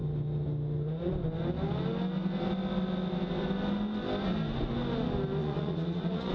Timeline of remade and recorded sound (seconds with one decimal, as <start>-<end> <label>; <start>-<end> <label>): 0.0-5.4 recorded; 5.4-6.3 remade